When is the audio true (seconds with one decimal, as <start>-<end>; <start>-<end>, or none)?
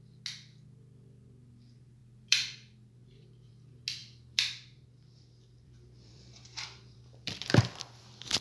0.0-2.0; 3.5-4.0; 8.0-8.4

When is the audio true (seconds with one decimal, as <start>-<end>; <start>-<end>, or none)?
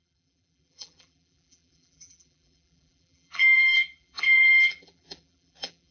none